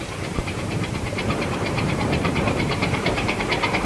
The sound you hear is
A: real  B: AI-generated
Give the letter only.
B